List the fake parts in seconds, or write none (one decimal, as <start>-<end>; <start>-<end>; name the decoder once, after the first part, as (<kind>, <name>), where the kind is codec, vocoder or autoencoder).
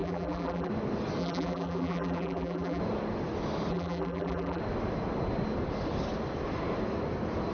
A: 0.0-0.7 (vocoder, BigVGAN v2); 1.2-2.8; 3.7-4.6